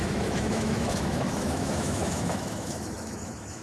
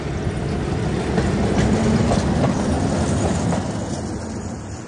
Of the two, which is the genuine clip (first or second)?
second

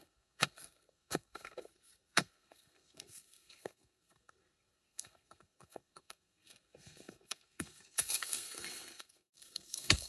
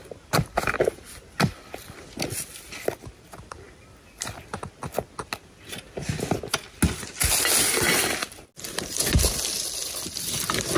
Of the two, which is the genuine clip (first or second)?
second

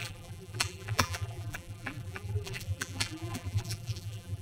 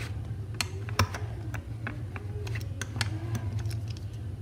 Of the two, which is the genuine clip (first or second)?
second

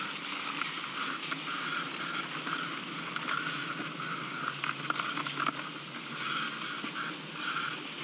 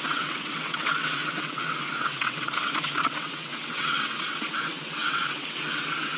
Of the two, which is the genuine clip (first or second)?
first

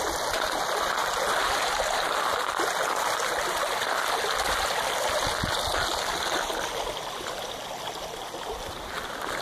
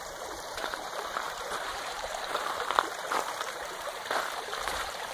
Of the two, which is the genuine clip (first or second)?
first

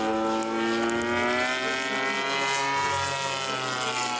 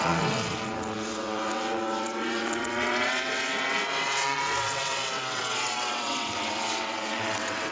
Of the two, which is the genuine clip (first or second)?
first